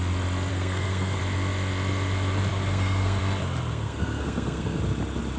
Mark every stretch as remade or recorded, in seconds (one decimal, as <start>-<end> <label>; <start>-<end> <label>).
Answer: 0.0-0.5 recorded; 0.5-1.2 remade; 1.2-2.5 recorded; 2.5-3.2 remade; 3.2-3.7 recorded; 3.7-4.8 remade; 4.8-5.4 recorded